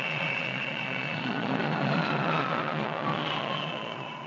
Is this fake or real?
fake